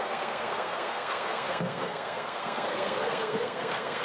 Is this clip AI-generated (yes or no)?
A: yes